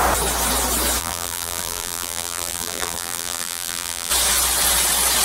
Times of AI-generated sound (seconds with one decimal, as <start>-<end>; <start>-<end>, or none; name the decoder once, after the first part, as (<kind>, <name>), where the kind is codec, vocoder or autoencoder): 1.0-4.1 (vocoder, BigVGAN v2)